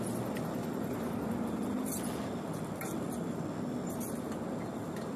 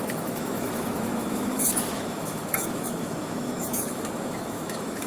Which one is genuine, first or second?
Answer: first